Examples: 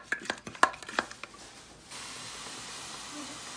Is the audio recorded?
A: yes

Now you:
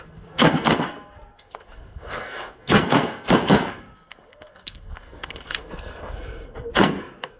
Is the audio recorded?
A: no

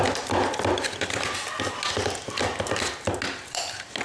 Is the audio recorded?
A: yes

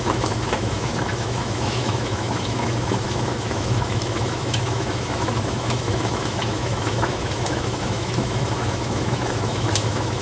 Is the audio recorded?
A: no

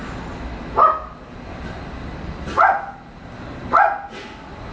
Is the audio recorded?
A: yes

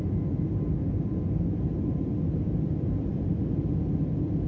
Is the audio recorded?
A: yes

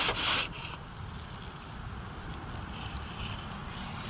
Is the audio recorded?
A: yes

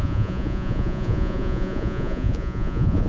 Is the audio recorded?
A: no